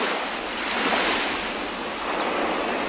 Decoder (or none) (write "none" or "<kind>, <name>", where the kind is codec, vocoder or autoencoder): none